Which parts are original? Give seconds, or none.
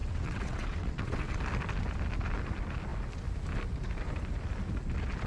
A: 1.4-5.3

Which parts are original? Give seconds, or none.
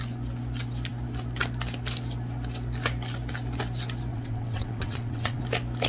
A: 0.0-4.1; 5.4-5.9